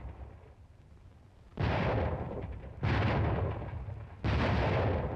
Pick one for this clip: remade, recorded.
recorded